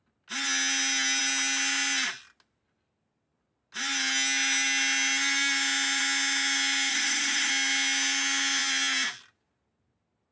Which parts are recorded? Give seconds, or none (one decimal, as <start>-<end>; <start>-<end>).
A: 0.0-6.9; 7.5-10.3